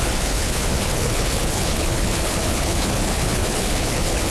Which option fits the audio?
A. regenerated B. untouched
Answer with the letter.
A